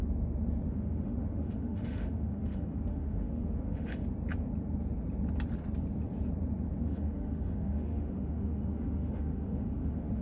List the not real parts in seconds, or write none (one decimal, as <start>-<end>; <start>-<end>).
0.7-4.0; 6.8-10.2